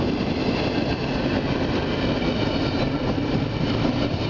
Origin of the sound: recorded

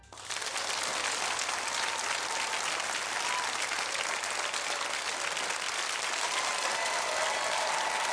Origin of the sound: recorded